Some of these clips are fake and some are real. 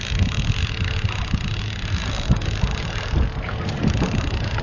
real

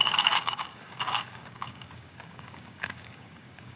fake